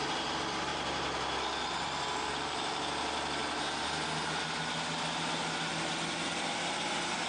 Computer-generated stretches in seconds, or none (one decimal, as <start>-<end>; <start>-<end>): none